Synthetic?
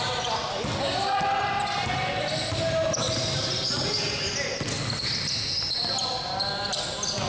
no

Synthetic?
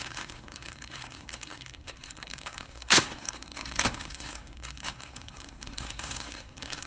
yes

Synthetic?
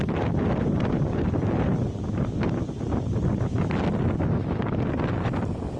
no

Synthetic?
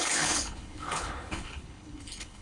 yes